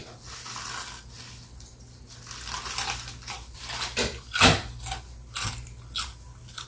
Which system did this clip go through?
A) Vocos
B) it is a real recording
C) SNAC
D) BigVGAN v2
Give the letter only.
B